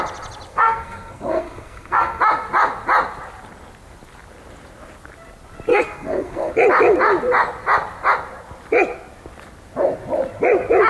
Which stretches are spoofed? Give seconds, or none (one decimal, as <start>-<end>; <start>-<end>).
0.5-2.2; 5.7-6.5